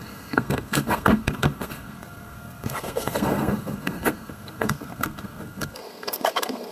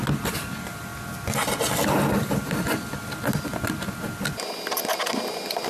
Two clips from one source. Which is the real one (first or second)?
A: second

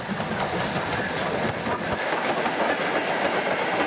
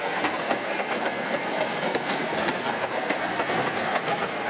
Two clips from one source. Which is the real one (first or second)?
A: first